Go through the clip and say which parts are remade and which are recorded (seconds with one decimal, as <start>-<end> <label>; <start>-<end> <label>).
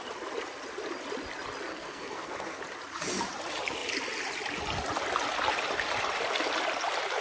0.0-1.7 recorded; 1.7-2.6 remade; 2.6-7.2 recorded